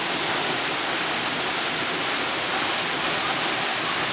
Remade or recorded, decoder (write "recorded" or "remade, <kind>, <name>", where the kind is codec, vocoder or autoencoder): recorded